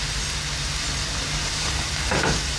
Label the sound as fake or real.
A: real